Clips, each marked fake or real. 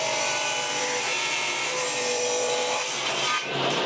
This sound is fake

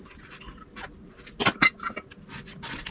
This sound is real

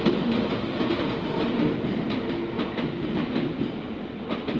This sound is real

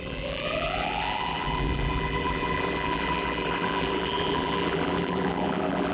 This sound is fake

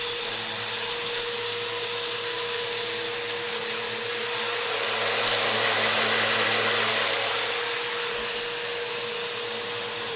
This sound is real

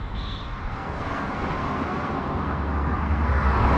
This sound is fake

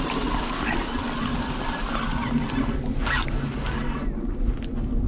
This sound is real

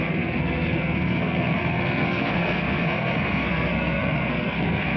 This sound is fake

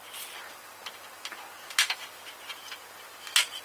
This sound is real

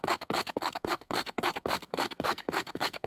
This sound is fake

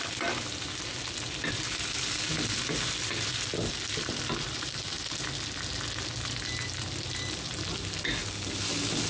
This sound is real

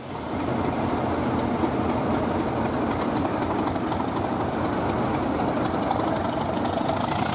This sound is real